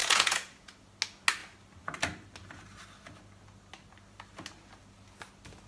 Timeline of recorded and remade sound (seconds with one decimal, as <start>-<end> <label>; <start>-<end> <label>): 0.0-0.7 remade; 0.7-5.7 recorded